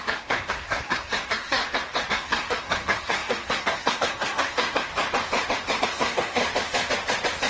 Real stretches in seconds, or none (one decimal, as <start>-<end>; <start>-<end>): 1.6-2.1; 4.9-5.8; 6.4-7.5